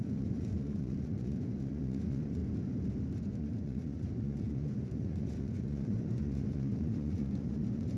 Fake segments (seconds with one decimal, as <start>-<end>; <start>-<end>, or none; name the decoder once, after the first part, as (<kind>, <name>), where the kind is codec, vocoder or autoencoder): 0.0-2.4 (vocoder, Vocos); 3.2-8.0